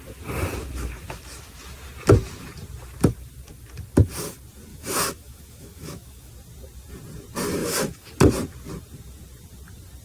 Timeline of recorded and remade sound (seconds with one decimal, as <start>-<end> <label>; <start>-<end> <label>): 0.0-4.7 recorded; 4.7-6.3 remade; 6.3-7.6 recorded; 7.6-8.1 remade; 8.1-10.0 recorded